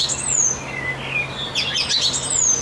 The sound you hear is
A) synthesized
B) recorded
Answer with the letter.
B